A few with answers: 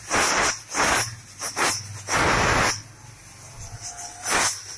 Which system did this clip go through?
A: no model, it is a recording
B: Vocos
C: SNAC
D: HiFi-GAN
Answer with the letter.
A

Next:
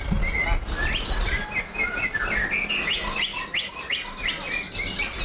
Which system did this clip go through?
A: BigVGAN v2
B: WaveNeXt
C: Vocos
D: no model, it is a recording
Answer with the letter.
D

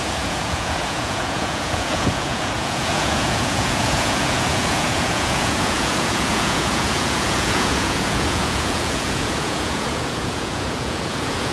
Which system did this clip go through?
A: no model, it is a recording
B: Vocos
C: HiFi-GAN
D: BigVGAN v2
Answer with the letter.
B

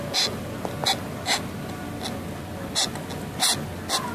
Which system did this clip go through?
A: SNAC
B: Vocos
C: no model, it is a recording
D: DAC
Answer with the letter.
C